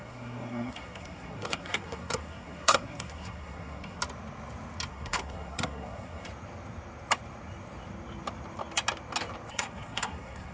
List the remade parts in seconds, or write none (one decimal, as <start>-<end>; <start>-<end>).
0.0-4.0; 4.9-6.3; 9.5-10.5